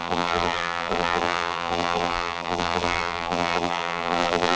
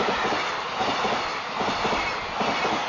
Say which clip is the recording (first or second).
second